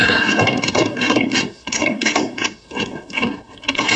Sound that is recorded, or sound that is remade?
remade